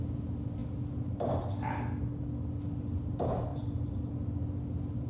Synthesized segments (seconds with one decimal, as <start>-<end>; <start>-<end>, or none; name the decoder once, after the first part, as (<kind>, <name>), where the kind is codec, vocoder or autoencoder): none